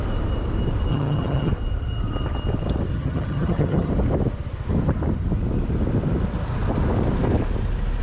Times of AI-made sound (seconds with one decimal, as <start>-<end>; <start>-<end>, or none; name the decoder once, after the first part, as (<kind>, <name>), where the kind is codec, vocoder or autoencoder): 0.9-1.5 (vocoder, HiFi-GAN); 2.9-3.9